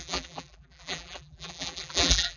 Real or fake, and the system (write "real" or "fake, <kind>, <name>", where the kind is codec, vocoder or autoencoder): fake, vocoder, BigVGAN v2